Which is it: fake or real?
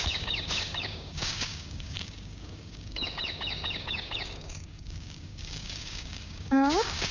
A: fake